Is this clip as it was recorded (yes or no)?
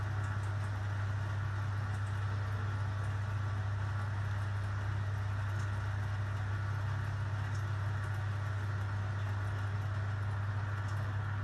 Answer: yes